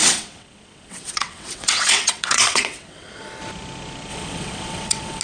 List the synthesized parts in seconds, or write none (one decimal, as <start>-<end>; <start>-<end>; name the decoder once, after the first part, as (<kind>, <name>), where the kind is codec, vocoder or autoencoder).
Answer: 0.0-3.1 (vocoder, WaveNeXt); 4.1-5.2